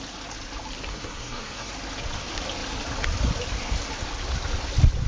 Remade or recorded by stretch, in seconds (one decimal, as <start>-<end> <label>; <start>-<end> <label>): 0.0-0.9 recorded; 0.9-1.7 remade; 1.7-5.1 recorded